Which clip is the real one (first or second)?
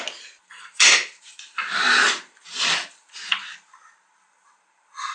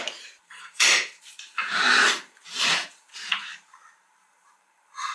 first